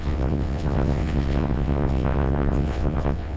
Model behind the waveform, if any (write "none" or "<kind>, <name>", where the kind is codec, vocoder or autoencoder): vocoder, WaveNeXt